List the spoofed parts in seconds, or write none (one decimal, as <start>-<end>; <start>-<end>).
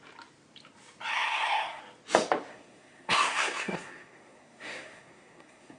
1.1-1.8; 2.5-5.8